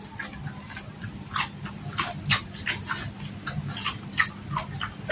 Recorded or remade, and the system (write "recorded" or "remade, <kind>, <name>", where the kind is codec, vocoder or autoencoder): recorded